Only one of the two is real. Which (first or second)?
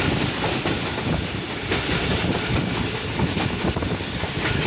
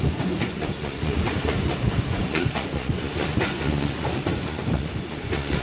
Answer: first